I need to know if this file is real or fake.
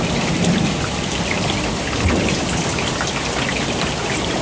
real